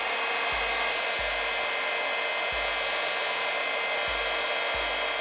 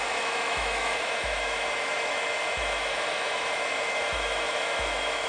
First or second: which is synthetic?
second